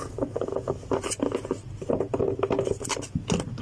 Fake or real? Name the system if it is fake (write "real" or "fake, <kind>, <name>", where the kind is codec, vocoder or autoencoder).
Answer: real